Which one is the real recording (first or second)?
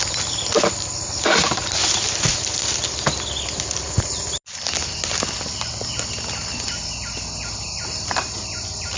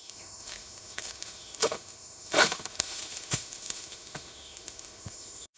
first